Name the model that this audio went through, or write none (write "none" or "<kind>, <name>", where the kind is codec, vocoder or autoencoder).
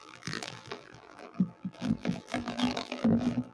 vocoder, BigVGAN v2